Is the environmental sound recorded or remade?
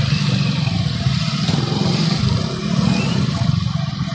recorded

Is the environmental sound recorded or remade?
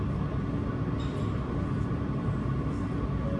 recorded